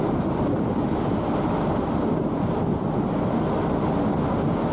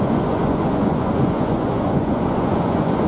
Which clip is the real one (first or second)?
first